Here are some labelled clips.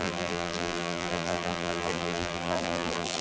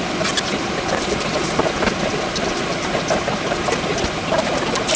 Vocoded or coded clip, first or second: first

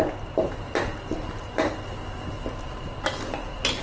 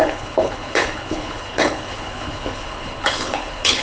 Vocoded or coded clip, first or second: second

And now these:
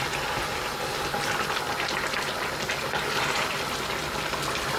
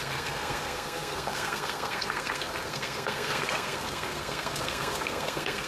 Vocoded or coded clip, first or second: second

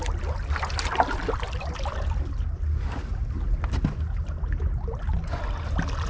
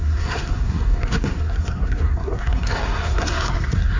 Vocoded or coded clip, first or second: second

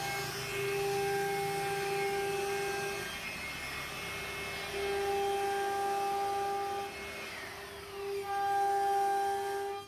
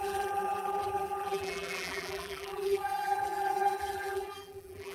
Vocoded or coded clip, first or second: second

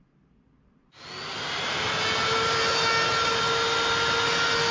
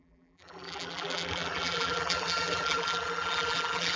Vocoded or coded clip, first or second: second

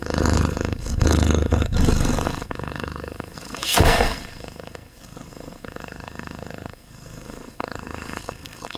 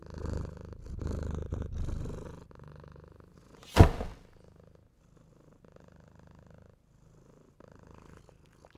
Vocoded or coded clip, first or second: first